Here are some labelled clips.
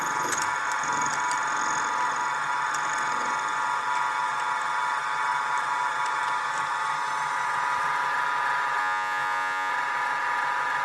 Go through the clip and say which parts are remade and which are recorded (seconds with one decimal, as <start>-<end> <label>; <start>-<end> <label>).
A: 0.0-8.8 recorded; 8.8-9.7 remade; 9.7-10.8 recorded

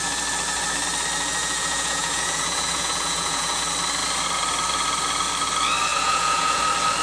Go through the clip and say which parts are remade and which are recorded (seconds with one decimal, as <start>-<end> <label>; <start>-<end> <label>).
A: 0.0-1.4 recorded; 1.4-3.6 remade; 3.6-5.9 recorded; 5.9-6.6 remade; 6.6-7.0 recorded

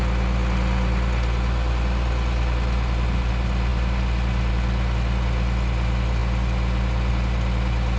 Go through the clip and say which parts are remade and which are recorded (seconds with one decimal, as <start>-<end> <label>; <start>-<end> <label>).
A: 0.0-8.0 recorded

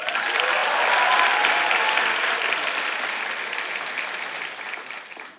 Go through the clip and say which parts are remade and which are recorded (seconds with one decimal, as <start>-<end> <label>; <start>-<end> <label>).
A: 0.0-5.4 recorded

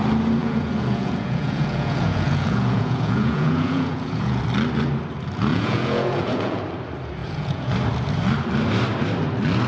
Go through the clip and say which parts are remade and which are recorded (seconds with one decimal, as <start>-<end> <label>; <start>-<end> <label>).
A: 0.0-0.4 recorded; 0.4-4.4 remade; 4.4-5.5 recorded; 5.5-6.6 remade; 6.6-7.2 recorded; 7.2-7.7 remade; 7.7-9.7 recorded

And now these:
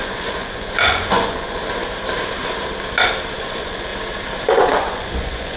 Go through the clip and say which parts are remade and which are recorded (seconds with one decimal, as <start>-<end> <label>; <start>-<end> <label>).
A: 0.0-1.6 remade; 1.6-3.4 recorded; 3.4-3.9 remade; 3.9-4.5 recorded; 4.5-5.6 remade